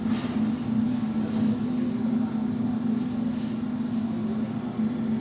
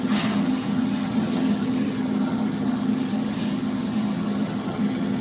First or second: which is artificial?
second